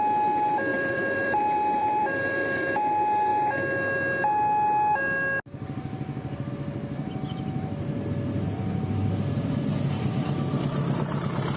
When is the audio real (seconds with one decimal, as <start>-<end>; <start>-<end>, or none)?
0.0-0.7; 1.4-1.8; 2.7-11.6